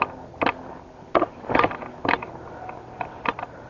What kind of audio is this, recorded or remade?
recorded